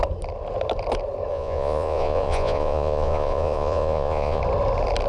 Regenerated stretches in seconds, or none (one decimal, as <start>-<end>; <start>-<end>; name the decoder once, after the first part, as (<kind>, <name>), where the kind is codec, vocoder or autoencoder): 1.3-4.4 (vocoder, Vocos)